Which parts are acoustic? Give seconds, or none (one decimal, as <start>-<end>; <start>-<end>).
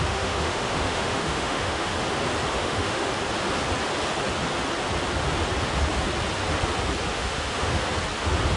1.9-2.5; 3.1-7.1; 7.8-8.6